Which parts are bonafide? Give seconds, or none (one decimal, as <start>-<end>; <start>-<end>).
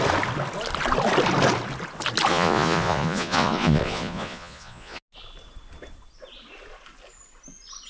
0.0-2.3; 5.0-7.9